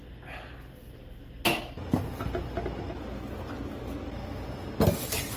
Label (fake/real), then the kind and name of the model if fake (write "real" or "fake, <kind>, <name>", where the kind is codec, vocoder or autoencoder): real